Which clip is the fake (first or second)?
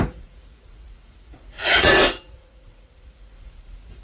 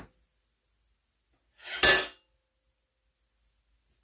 first